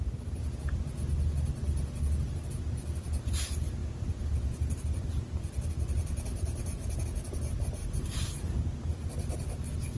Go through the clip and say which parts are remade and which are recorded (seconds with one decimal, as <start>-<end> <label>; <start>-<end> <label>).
0.0-1.6 recorded; 1.6-2.4 remade; 2.4-3.8 recorded; 3.8-7.0 remade; 7.0-7.8 recorded; 7.8-8.6 remade; 8.6-10.0 recorded